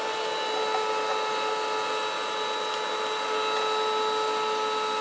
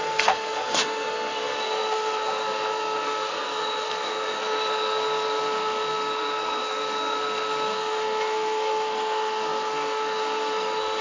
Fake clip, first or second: second